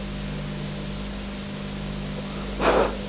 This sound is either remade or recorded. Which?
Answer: recorded